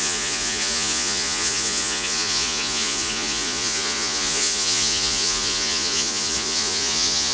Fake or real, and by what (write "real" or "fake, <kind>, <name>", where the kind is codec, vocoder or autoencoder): fake, vocoder, Vocos